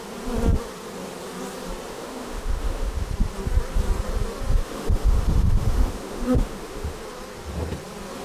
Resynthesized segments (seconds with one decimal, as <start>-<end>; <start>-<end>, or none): 1.9-3.1; 4.6-7.0